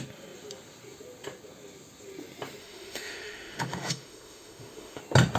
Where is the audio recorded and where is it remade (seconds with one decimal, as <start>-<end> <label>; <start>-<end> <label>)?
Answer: 0.0-2.6 recorded; 2.6-5.0 remade; 5.0-5.4 recorded

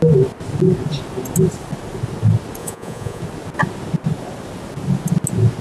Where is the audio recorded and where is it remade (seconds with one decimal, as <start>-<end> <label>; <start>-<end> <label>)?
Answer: 0.0-2.6 recorded; 2.6-3.2 remade; 3.2-5.6 recorded

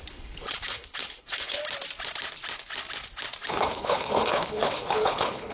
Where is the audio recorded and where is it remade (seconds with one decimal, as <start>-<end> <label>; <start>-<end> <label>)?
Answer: 0.0-1.6 remade; 1.6-3.5 recorded; 3.5-5.5 remade

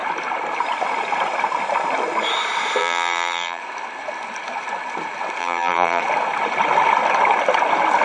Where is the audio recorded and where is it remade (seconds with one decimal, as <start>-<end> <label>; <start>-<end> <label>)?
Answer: 0.0-2.8 recorded; 2.8-3.6 remade; 3.6-5.4 recorded; 5.4-6.0 remade; 6.0-8.0 recorded